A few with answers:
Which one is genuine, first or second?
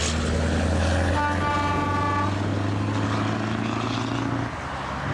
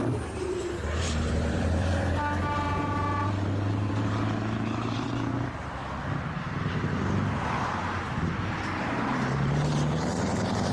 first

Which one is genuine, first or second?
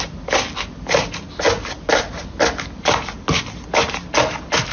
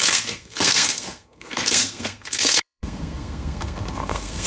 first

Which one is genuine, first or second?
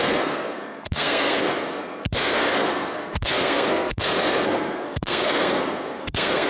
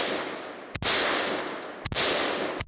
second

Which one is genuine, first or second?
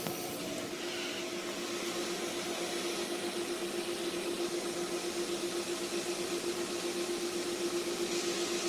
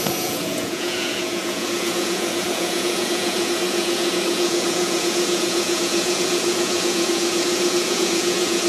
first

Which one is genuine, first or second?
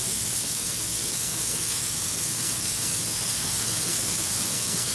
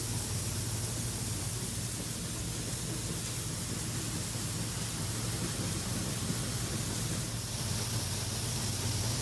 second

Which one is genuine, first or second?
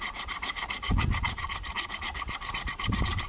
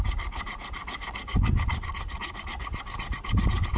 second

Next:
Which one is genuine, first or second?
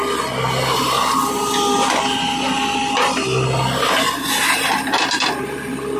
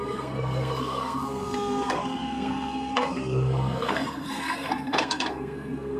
first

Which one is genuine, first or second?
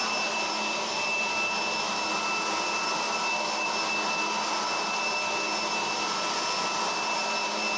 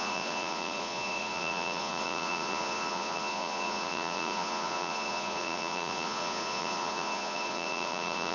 first